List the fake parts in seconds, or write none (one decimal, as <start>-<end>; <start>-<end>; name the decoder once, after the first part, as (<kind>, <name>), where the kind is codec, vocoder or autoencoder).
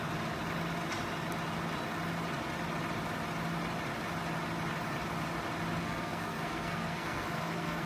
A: 5.8-7.9 (codec, SNAC)